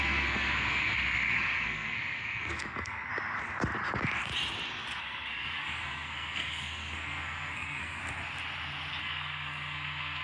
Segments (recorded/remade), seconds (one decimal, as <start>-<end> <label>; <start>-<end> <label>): 0.0-3.1 remade; 3.1-5.0 recorded; 5.0-8.0 remade; 8.0-9.0 recorded; 9.0-10.2 remade